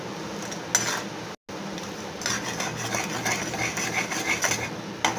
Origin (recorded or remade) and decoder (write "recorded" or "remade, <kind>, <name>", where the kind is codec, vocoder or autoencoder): recorded